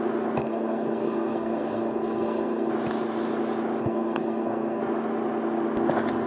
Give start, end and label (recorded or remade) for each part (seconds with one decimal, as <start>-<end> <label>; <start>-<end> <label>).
0.0-0.4 recorded; 0.4-2.7 remade; 2.7-3.8 recorded; 3.8-4.8 remade; 4.8-6.3 recorded